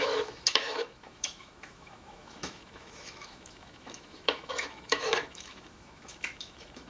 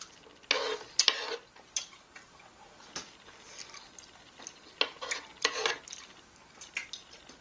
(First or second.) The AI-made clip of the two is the first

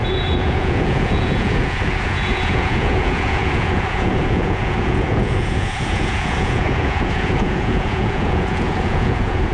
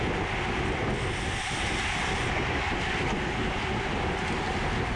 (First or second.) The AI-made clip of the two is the first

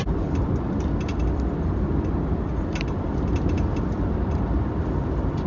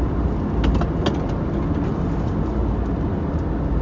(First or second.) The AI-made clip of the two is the first